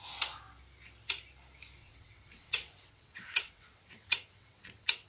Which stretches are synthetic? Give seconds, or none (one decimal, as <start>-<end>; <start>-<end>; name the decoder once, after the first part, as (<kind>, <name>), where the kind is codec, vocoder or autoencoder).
1.8-5.1 (vocoder, WaveNeXt)